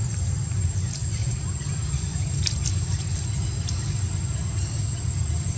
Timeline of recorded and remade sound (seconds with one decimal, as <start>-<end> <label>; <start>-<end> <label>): 0.0-5.6 recorded